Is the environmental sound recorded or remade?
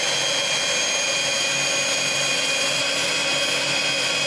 recorded